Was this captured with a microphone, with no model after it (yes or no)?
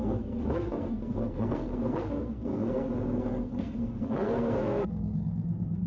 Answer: no